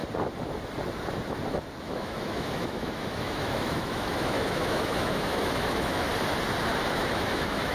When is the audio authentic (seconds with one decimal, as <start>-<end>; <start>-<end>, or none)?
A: 0.0-1.8; 6.1-6.9